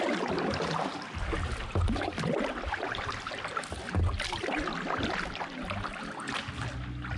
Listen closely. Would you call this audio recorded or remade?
recorded